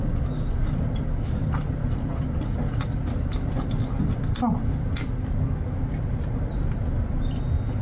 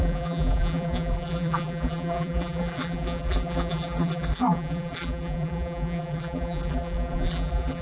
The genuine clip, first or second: first